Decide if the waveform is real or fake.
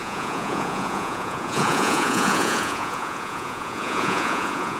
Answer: fake